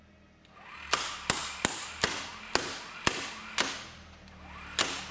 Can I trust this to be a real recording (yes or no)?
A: yes